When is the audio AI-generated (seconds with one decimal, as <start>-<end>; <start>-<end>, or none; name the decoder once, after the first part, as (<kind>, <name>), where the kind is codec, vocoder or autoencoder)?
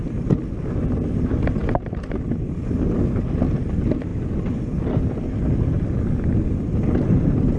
none